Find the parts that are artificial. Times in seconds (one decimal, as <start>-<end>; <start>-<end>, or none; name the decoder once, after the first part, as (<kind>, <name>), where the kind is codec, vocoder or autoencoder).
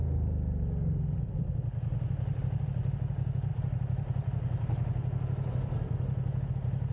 none